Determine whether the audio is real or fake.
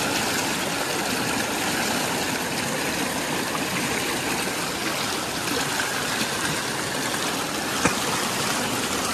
real